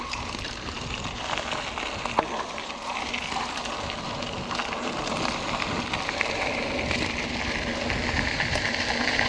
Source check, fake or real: real